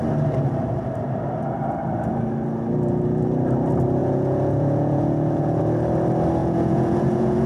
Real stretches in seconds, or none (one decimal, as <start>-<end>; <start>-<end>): 0.0-4.0; 5.6-6.4